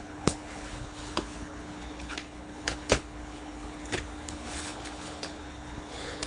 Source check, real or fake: fake